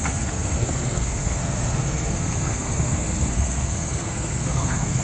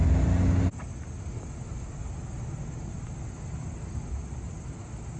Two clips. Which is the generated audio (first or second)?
first